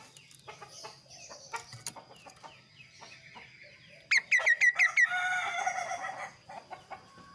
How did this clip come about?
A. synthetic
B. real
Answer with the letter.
B